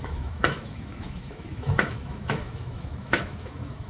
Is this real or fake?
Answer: fake